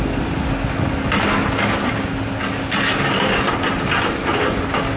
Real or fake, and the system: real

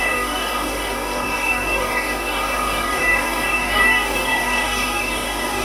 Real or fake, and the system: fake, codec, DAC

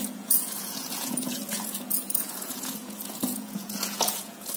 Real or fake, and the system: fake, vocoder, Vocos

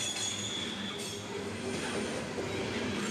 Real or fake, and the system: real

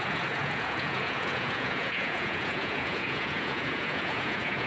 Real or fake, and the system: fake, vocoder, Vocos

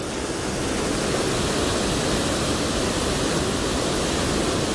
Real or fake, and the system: real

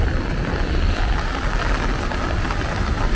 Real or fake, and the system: real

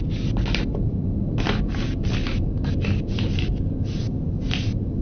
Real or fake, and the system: real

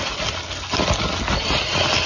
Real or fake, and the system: real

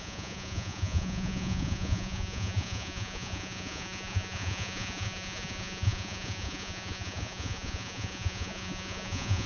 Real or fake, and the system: fake, vocoder, Vocos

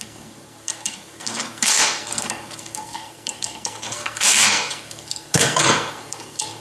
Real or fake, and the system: fake, codec, SNAC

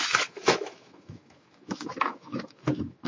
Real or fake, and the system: fake, autoencoder, DAC-VAE